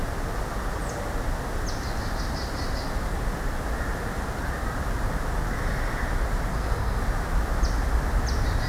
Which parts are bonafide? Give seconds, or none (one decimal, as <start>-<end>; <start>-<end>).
0.0-6.5; 7.0-8.7